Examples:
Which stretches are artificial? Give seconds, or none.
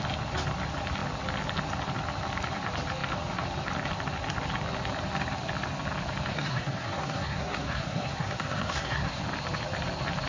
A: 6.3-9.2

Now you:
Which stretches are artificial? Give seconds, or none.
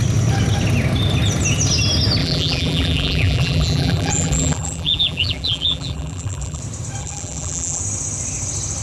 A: 2.2-6.6; 7.0-7.8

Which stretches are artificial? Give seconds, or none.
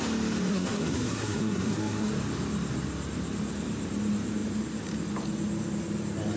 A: 0.5-2.1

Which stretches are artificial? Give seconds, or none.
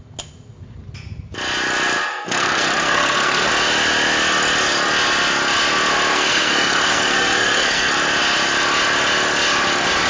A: 2.1-3.5; 6.1-7.9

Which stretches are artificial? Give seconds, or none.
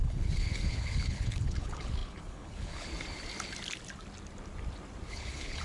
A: 0.0-2.9; 5.1-5.6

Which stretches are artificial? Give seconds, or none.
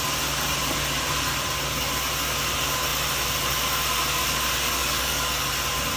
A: 4.8-5.5